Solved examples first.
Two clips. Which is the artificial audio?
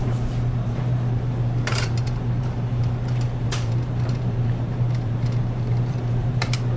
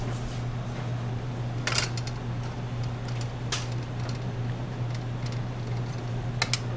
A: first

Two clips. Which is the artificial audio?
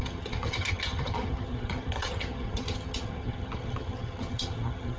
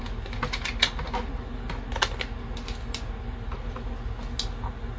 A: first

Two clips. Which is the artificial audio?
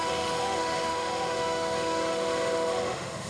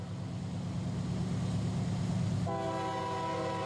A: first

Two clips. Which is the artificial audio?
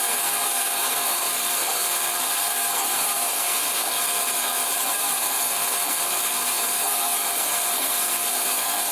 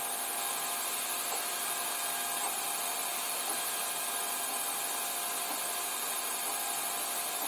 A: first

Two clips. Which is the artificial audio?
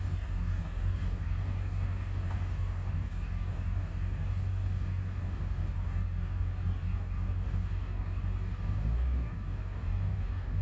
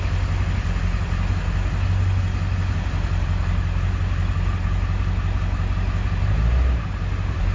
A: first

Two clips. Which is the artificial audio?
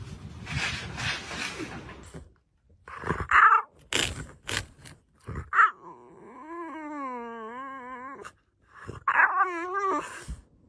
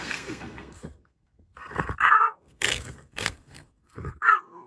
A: second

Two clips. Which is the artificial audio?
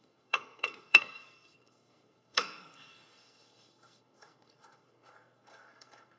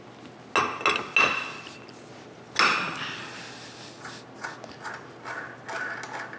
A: first